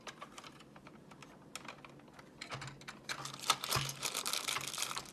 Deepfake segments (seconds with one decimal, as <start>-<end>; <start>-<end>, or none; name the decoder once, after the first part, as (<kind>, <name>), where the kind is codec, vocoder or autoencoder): none